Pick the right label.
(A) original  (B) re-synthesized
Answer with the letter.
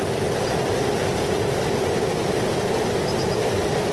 A